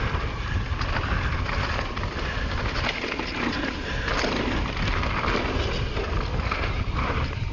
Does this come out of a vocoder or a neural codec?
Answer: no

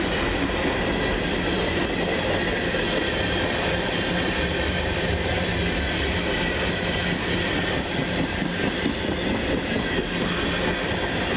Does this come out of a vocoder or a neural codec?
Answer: no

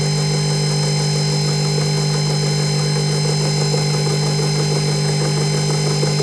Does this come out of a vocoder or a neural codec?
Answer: no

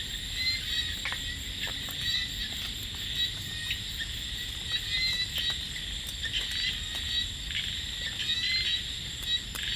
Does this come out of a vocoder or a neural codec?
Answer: no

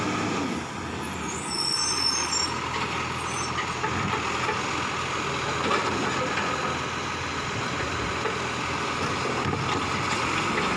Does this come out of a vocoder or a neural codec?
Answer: no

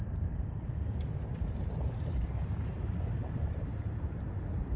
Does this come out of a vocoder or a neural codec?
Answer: yes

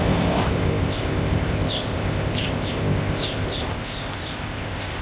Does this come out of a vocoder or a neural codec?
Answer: yes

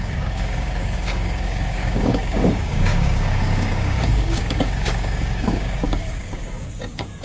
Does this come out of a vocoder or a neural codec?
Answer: yes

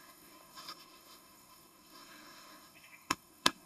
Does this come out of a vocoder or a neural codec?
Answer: yes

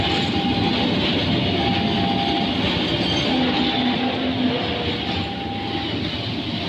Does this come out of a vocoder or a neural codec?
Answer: no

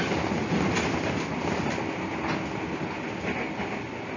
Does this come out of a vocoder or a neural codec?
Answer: no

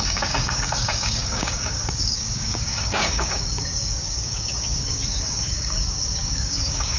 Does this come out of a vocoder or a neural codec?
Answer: yes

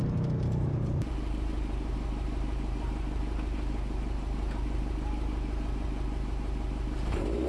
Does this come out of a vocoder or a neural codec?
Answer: yes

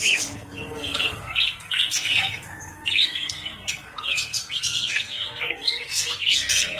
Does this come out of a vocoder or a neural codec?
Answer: yes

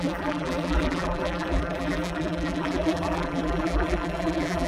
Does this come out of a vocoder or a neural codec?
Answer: yes